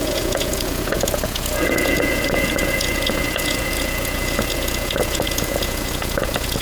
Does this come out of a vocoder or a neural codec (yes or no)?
yes